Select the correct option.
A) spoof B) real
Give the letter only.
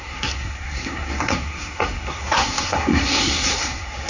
A